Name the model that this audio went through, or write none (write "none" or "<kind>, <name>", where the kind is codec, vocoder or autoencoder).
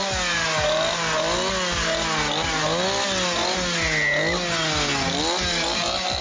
none